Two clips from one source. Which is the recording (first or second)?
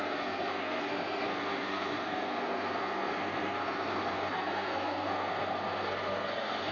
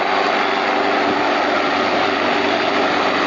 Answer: second